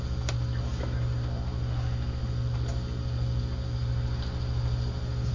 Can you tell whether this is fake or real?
real